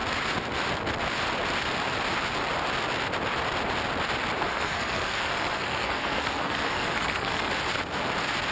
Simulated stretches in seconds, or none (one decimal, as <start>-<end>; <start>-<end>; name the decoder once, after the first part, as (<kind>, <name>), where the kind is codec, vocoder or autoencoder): 4.4-7.5 (codec, SNAC)